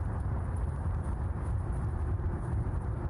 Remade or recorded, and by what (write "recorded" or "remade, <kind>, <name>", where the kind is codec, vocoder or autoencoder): remade, vocoder, BigVGAN v2